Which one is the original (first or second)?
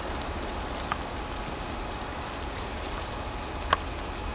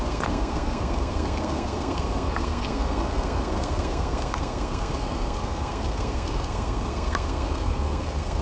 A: first